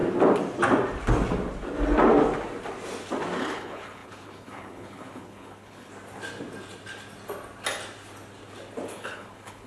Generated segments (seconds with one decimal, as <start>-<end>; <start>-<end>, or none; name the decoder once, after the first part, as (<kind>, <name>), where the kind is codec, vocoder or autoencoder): 3.4-5.9 (codec, HILCodec); 8.9-9.7